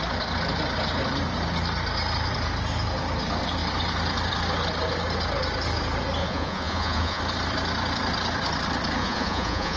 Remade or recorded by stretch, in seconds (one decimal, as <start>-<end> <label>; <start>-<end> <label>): 0.0-6.2 recorded; 6.2-7.2 remade; 7.2-9.0 recorded; 9.0-9.8 remade